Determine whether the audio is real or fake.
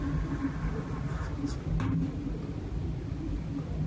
real